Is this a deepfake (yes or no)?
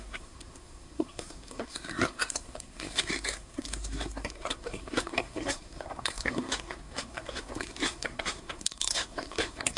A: yes